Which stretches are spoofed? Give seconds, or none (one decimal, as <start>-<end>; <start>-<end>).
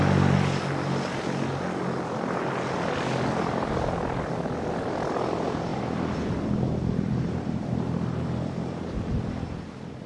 5.7-9.2